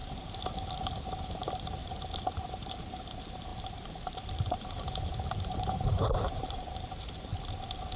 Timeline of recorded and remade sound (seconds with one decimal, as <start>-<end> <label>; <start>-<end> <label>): 0.0-7.3 remade; 7.3-8.0 recorded